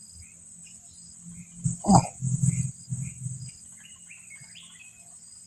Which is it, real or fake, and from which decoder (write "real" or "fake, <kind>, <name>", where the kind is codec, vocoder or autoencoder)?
real